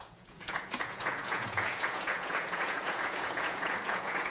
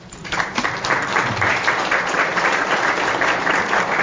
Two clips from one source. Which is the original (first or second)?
second